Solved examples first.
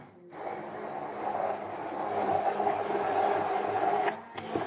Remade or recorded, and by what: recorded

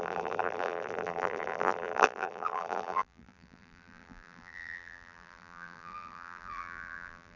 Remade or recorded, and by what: remade, vocoder, BigVGAN v2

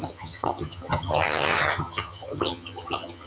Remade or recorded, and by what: remade, vocoder, HiFi-GAN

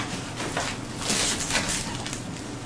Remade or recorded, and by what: recorded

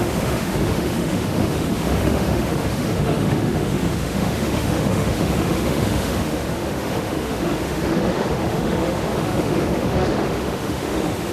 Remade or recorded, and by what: remade, autoencoder, DAC-VAE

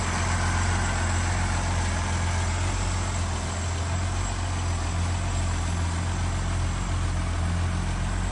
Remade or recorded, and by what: recorded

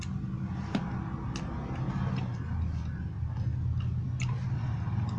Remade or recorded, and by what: recorded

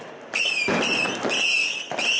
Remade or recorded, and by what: recorded